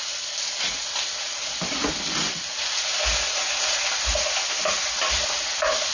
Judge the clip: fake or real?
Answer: real